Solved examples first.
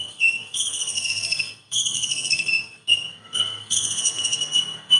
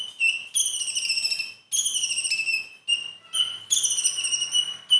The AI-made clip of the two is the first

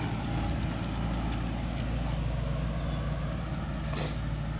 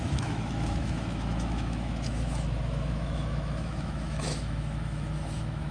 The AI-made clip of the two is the second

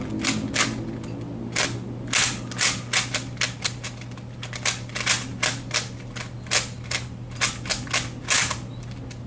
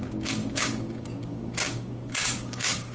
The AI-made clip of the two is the second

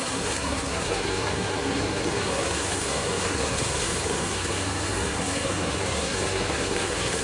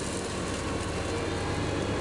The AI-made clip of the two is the first